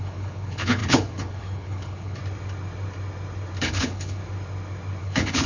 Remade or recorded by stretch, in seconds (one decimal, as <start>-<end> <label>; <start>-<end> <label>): 0.0-2.2 remade; 2.2-3.6 recorded; 3.6-4.2 remade; 4.2-5.0 recorded; 5.0-5.5 remade

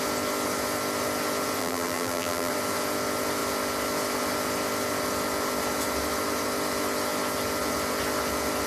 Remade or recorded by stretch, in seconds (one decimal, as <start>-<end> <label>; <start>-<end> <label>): 0.0-1.6 recorded; 1.6-2.5 remade; 2.5-8.7 recorded